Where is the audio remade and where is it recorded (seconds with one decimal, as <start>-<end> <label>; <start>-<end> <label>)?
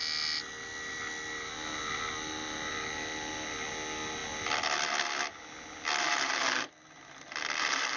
0.0-8.0 recorded